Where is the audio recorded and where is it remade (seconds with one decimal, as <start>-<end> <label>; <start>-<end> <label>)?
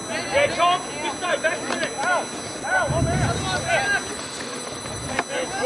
0.0-4.1 recorded; 4.1-5.1 remade; 5.1-5.7 recorded